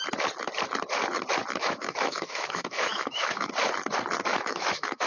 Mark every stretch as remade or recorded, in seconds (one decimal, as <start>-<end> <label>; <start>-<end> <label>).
0.0-1.6 recorded; 1.6-3.5 remade; 3.5-4.3 recorded; 4.3-5.1 remade